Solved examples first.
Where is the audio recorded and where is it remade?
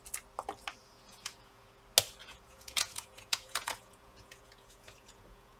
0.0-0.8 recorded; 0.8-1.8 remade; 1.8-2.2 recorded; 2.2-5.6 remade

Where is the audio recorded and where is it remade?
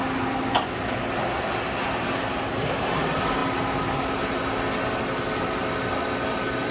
0.0-6.7 recorded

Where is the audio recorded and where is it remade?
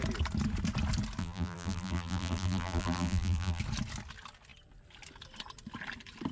0.0-1.2 recorded; 1.2-3.6 remade; 3.6-6.3 recorded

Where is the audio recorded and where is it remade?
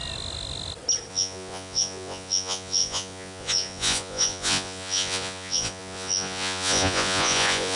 0.0-1.1 recorded; 1.1-7.8 remade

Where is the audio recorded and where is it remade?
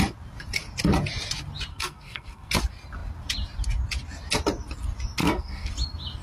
0.0-1.7 recorded; 1.7-2.5 remade; 2.5-5.2 recorded; 5.2-5.7 remade; 5.7-6.2 recorded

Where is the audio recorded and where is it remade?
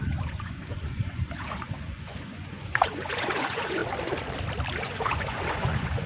0.0-3.8 remade; 3.8-4.8 recorded; 4.8-6.1 remade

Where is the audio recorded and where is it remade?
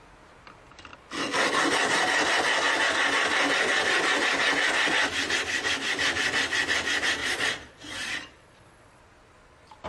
0.0-7.2 recorded; 7.2-9.0 remade; 9.0-9.9 recorded